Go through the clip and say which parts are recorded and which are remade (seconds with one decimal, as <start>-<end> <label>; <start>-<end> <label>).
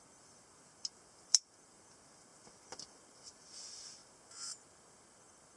0.0-5.6 recorded